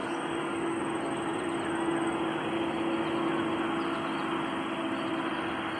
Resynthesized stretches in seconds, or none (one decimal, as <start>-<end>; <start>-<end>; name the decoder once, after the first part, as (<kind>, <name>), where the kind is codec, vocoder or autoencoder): 0.0-0.8 (codec, DAC)